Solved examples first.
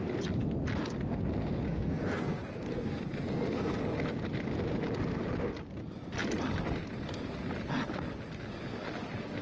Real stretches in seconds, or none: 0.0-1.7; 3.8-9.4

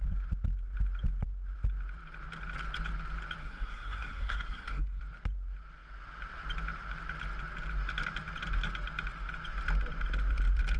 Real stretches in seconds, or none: 0.0-3.4; 5.0-10.8

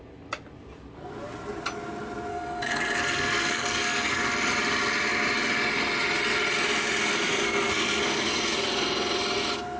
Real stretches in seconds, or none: 0.0-2.3; 4.2-7.1; 8.4-9.8

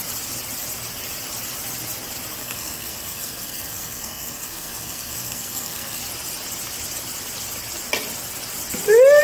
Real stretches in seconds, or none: 0.0-2.4; 6.0-9.2